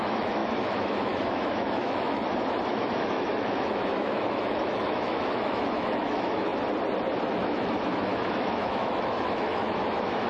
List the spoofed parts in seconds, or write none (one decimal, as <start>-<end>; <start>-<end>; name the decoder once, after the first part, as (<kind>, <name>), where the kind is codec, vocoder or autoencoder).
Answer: 0.0-2.2 (autoencoder, DAC-VAE); 2.7-6.5; 7.3-10.3